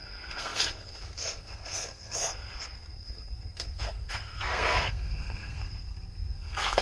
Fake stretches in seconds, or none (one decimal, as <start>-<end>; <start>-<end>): 0.0-6.8